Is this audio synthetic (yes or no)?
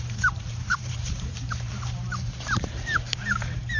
yes